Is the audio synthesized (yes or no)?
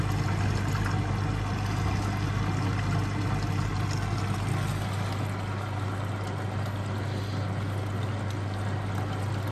no